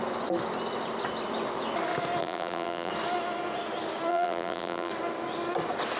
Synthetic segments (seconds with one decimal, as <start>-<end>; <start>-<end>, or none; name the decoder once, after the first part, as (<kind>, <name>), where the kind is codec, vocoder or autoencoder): 2.2-2.9 (vocoder, BigVGAN v2); 4.1-4.9